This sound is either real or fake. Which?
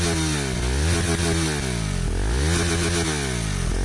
real